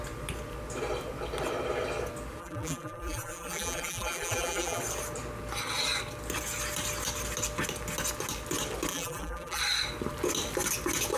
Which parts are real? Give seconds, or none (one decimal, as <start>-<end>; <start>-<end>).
0.0-2.4; 4.8-8.9; 9.6-11.2